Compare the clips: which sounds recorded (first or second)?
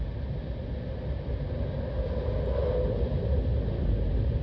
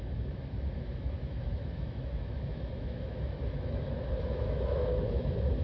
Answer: first